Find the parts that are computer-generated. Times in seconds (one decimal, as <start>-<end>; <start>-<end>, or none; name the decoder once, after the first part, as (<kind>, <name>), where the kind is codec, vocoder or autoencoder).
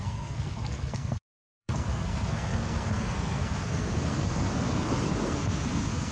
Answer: 0.0-6.1 (codec, SNAC)